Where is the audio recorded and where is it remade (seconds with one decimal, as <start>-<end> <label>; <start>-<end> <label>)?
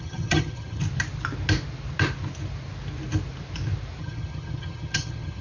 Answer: 0.0-0.8 remade; 0.8-4.0 recorded; 4.0-5.4 remade